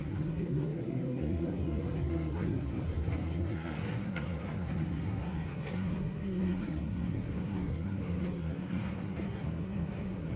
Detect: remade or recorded remade